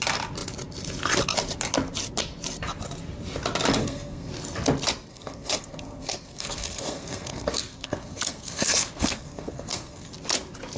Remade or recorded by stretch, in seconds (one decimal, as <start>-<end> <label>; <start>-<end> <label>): 0.0-3.8 recorded; 3.8-4.3 remade; 4.3-5.1 recorded; 5.1-10.1 remade; 10.1-10.8 recorded